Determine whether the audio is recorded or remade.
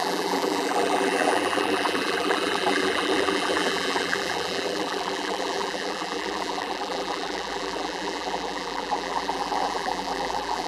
remade